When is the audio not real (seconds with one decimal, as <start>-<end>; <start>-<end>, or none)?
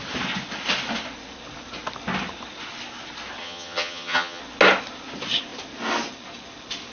3.4-4.4